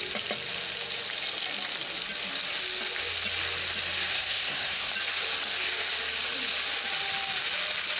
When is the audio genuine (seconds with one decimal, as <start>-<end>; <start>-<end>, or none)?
0.0-4.1; 4.9-8.0